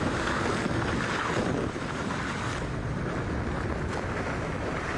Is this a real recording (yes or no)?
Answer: yes